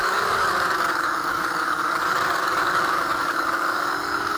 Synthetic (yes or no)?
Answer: yes